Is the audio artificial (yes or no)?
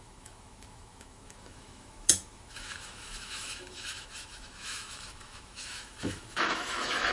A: yes